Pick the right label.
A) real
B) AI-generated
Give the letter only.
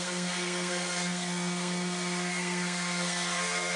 B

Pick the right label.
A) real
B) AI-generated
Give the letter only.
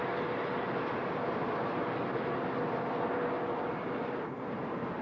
A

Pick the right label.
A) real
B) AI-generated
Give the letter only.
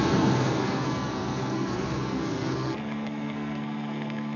B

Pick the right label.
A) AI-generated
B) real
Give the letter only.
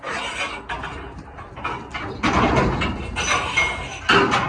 B